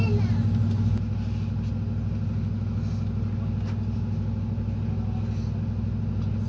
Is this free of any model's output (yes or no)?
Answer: yes